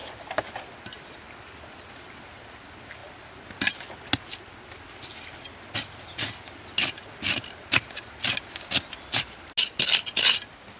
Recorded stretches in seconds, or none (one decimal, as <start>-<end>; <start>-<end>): 0.0-10.8